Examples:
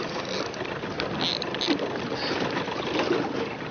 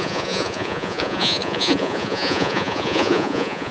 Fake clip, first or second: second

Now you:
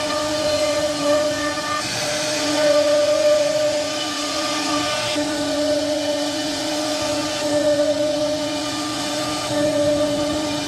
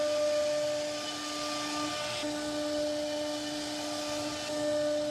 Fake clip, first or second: first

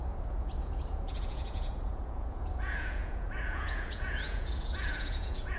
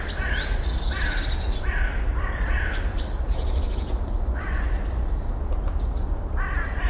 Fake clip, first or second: first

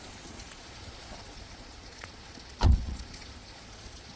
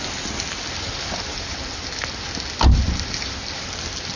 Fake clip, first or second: first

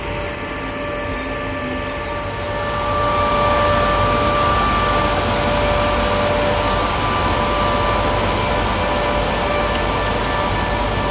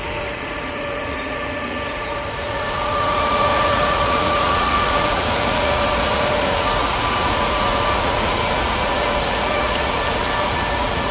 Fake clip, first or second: second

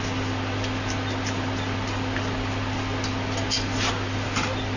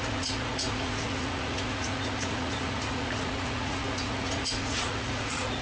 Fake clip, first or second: second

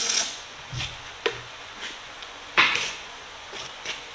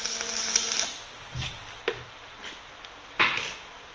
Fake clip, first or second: first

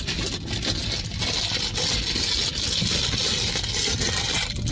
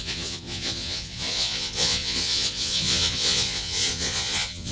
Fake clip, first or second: second